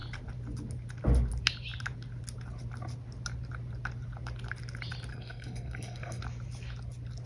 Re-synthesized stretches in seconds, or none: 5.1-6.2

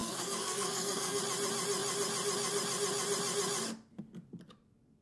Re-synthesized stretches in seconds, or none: 0.0-1.2